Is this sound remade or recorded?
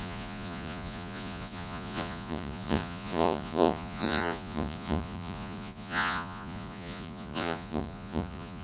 remade